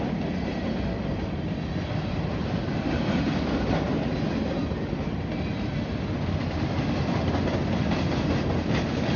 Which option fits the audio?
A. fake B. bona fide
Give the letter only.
B